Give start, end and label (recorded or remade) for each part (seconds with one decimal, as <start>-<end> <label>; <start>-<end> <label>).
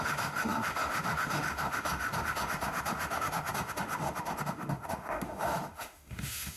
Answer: 0.0-6.6 remade